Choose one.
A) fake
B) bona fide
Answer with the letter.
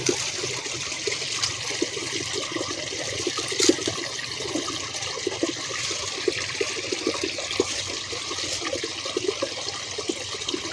B